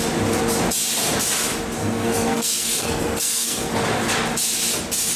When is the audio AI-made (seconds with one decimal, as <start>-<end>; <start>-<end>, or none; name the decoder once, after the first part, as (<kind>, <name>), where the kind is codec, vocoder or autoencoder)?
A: 1.8-3.7 (codec, SNAC)